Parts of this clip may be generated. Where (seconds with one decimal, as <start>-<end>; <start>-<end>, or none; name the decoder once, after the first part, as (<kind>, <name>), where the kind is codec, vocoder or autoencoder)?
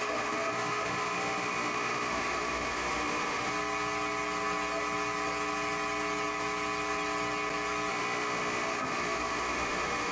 0.0-3.5 (autoencoder, DAC-VAE); 7.9-10.1